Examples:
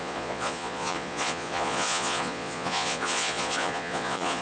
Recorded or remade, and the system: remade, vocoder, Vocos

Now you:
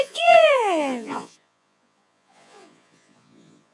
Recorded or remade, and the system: remade, vocoder, Vocos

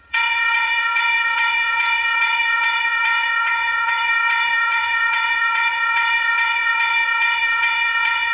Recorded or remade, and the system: remade, vocoder, Vocos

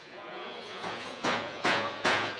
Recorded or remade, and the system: remade, vocoder, Vocos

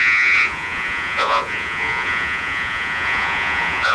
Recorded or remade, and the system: remade, vocoder, Vocos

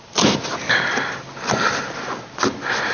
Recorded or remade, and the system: recorded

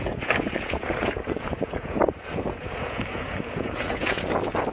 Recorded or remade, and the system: remade, vocoder, Vocos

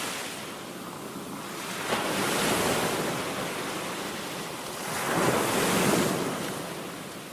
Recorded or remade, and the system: recorded